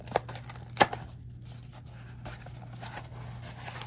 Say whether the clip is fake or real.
real